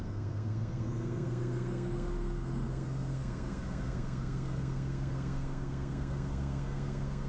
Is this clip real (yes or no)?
no